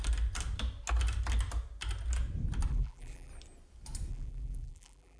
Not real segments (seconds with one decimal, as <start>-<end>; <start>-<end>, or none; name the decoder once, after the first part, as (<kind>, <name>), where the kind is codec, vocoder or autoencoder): 2.7-3.3 (vocoder, BigVGAN v2); 4.1-5.2